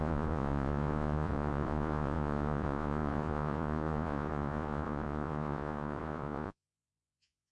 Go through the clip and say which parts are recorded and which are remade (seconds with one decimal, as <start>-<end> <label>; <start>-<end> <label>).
0.0-7.5 remade